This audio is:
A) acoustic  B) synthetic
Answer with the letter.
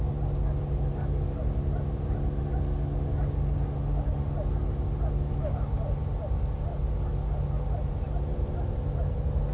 A